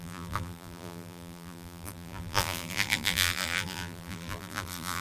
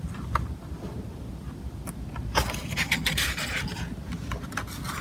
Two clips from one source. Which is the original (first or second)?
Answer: second